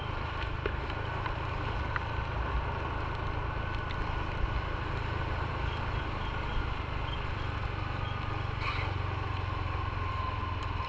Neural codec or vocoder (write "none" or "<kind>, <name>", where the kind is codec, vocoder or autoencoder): none